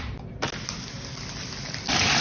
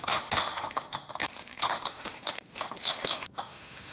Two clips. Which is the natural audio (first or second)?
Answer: first